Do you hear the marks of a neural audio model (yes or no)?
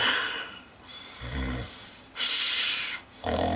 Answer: yes